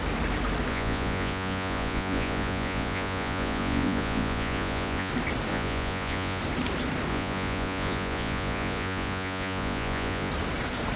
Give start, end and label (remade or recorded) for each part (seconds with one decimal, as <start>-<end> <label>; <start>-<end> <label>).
0.0-0.7 recorded; 0.7-5.1 remade; 5.1-5.5 recorded; 5.5-6.4 remade; 6.4-7.1 recorded; 7.1-10.3 remade; 10.3-11.0 recorded